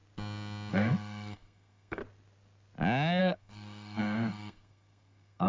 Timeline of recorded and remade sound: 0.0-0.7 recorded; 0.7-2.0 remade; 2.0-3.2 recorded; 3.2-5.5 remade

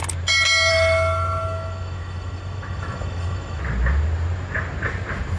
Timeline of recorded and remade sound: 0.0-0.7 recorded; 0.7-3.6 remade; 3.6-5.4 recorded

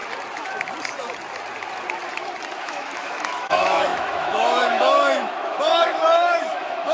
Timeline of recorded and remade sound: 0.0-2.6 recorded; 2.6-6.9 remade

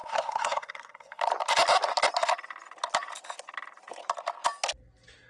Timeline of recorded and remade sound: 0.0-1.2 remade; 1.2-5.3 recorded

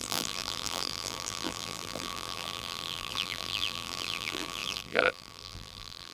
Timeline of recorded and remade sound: 0.0-6.1 remade

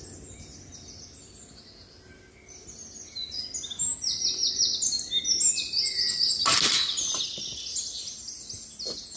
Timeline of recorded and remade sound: 0.0-9.2 recorded